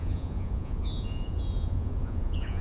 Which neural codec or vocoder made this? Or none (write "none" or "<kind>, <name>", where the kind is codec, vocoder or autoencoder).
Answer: vocoder, Vocos